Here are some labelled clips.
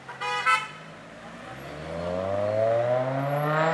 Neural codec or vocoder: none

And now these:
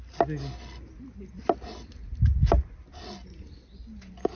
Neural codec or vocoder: none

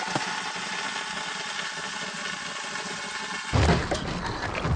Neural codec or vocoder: none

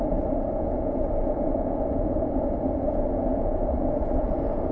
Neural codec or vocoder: vocoder, Vocos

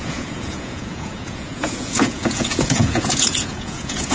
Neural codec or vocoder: vocoder, Vocos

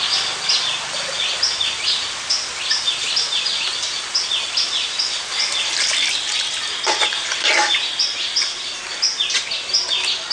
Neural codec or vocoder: none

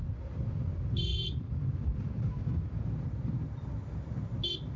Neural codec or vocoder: none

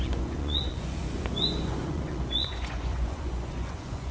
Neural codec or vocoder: vocoder, Vocos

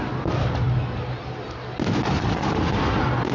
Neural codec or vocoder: none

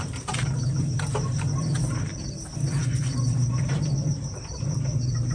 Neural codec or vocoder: none